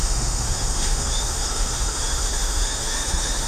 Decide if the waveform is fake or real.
fake